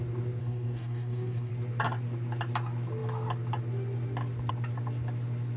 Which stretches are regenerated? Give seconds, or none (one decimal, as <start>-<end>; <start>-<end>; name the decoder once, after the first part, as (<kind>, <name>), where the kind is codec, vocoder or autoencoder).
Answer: 0.4-1.5 (codec, DAC)